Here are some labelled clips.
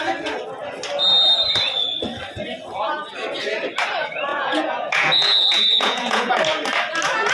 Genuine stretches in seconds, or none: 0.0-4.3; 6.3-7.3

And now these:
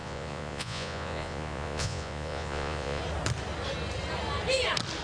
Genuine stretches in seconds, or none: 3.0-5.0